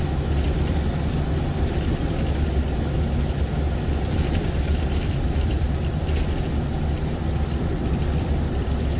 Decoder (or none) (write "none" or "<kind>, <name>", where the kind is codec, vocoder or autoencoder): none